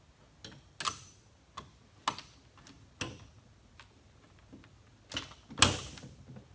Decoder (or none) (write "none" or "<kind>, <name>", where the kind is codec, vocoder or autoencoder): none